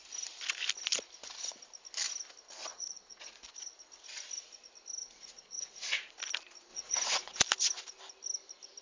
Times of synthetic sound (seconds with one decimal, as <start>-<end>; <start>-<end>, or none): 2.7-3.4; 5.0-6.1; 6.7-7.4